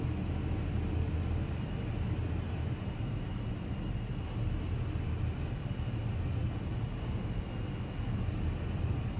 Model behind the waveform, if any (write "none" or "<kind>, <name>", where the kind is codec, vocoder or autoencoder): none